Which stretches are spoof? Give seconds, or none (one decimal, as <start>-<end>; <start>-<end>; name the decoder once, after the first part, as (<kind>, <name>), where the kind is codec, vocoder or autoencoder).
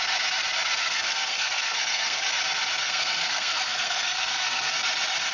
0.8-2.3 (codec, SNAC); 2.8-4.7